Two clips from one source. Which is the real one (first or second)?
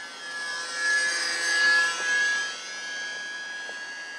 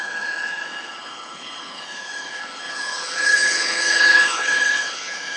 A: first